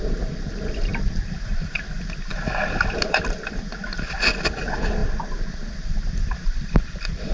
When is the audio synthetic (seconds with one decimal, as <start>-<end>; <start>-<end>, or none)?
0.0-7.3